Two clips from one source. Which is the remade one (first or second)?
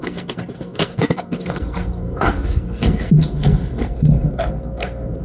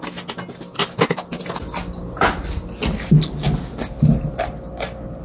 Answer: first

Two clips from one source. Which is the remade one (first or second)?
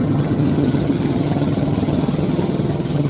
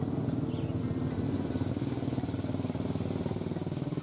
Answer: first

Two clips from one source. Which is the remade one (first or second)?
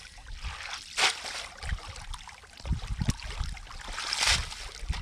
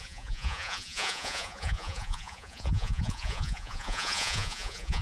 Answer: second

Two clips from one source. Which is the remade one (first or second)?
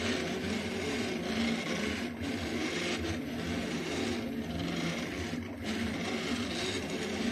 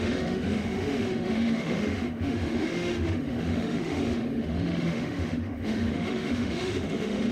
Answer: second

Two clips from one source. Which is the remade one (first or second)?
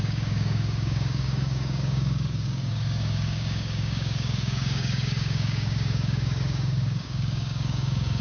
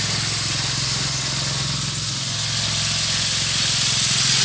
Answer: first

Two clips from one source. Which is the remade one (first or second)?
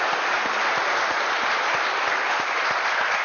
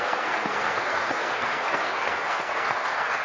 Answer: second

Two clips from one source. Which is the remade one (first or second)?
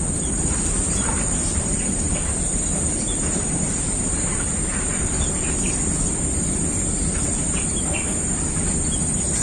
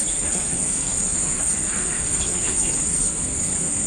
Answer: second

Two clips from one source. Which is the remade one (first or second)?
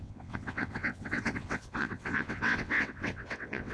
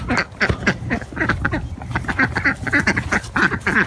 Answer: first